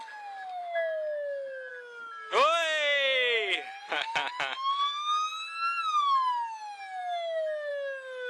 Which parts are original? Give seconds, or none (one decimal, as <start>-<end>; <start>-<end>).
0.0-8.3